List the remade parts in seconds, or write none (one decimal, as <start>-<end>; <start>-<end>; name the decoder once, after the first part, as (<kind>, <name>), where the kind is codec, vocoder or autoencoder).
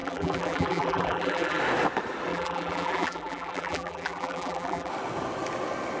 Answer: 0.0-1.6 (vocoder, BigVGAN v2); 2.3-4.9